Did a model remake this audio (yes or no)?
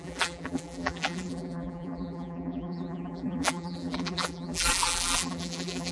yes